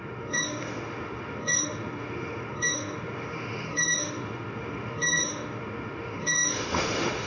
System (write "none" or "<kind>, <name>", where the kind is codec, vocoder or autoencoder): autoencoder, DAC-VAE